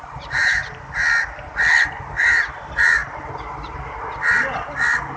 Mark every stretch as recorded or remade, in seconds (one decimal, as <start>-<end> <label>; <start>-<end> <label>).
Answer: 0.0-0.6 remade; 0.6-2.1 recorded; 2.1-3.0 remade; 3.0-5.2 recorded